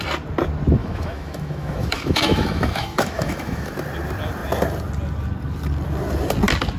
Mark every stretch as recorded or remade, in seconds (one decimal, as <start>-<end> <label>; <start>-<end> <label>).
0.0-0.8 recorded; 0.8-3.7 remade; 3.7-6.8 recorded